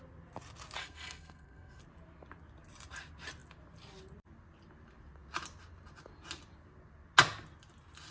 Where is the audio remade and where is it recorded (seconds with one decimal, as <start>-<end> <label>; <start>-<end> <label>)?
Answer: 0.0-0.8 recorded; 0.8-1.8 remade; 1.8-8.1 recorded